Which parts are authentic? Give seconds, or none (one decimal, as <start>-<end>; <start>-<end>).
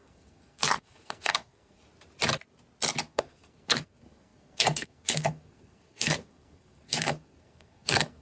1.8-3.0